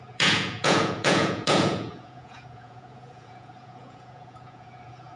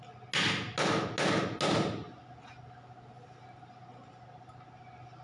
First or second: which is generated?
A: first